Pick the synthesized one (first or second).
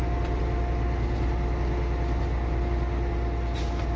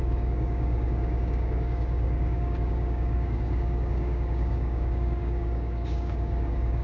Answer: second